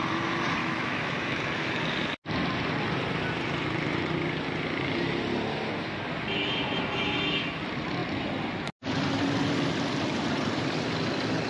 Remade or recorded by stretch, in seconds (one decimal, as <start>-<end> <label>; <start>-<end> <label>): 0.0-0.6 recorded; 0.6-1.8 remade; 1.8-11.5 recorded